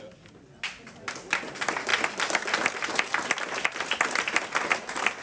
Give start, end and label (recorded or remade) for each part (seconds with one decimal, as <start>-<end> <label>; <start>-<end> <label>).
0.0-5.2 recorded